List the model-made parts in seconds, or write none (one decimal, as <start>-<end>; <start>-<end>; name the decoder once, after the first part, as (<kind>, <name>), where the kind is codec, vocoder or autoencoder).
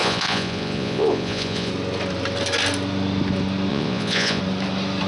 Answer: 0.0-1.7 (vocoder, Vocos); 3.7-4.4